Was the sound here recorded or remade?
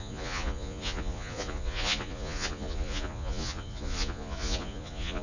remade